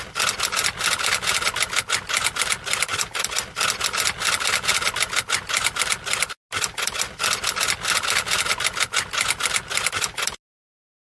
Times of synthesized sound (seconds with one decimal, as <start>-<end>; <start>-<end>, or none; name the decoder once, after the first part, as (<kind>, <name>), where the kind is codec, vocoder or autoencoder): none